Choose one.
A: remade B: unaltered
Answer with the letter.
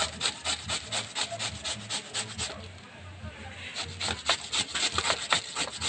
B